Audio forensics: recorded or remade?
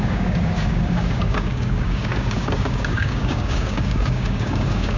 remade